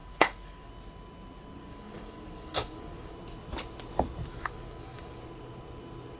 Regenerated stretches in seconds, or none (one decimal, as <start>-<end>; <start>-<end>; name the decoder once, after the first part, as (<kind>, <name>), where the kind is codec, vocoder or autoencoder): 0.0-0.7 (codec, DAC); 1.6-3.1; 4.3-5.2